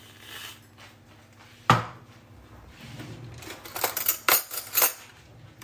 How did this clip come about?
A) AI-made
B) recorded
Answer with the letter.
B